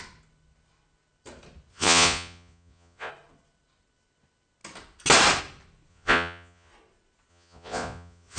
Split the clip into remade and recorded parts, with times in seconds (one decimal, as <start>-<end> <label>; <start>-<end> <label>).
0.0-1.7 recorded; 1.7-3.1 remade; 3.1-5.9 recorded; 5.9-6.7 remade; 6.7-7.3 recorded; 7.3-8.4 remade

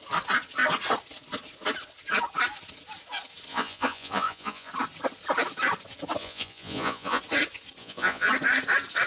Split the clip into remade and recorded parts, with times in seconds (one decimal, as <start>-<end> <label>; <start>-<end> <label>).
0.0-3.5 recorded; 3.5-4.7 remade; 4.7-6.2 recorded; 6.2-7.2 remade; 7.2-7.8 recorded; 7.8-8.3 remade; 8.3-9.1 recorded

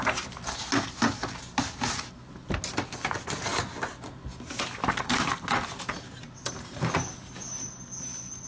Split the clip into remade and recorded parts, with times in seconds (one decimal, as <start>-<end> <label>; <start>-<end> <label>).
0.0-8.5 recorded

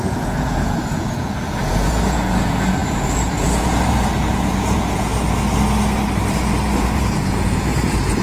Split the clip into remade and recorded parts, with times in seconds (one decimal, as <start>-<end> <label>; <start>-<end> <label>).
0.0-5.1 remade; 5.1-6.8 recorded; 6.8-8.2 remade

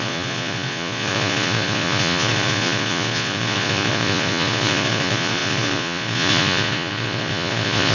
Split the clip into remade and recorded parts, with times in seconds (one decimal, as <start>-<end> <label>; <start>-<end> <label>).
0.0-7.9 remade